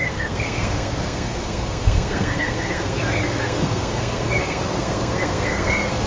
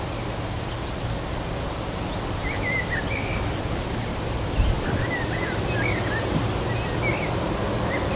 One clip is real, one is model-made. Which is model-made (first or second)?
first